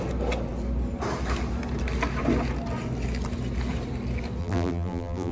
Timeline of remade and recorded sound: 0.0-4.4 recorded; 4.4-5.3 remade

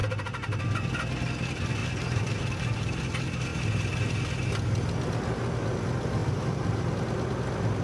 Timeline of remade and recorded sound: 0.0-0.6 remade; 0.6-1.8 recorded; 1.8-3.0 remade; 3.0-6.2 recorded; 6.2-6.9 remade; 6.9-7.8 recorded

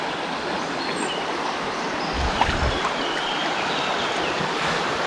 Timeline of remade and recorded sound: 0.0-5.1 recorded